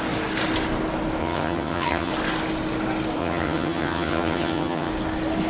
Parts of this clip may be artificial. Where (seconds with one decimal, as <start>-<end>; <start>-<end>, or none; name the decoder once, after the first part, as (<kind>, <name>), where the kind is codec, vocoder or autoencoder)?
1.2-2.1 (vocoder, HiFi-GAN); 3.2-4.9